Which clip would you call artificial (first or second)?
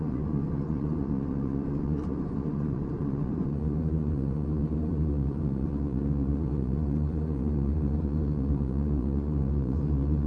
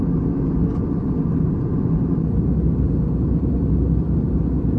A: first